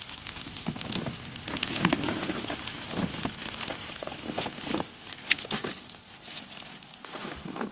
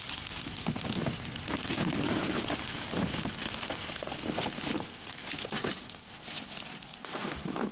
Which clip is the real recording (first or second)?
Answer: first